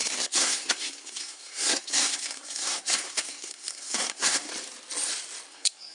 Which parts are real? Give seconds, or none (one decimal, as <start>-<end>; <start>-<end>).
4.5-5.5

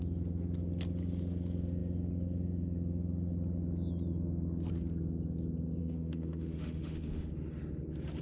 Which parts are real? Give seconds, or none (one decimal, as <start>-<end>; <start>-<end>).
0.0-5.8; 7.3-8.2

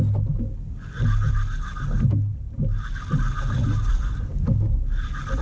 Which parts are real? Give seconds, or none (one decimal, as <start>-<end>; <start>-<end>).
0.0-5.4

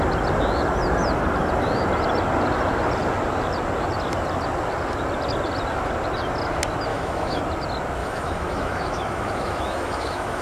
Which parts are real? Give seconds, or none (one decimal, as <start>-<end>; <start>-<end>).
0.0-6.9; 7.4-8.0

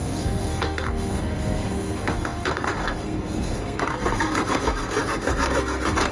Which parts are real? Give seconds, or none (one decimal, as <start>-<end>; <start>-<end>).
none